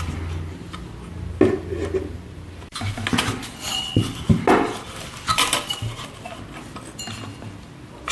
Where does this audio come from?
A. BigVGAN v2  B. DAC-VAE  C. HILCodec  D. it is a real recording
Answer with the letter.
D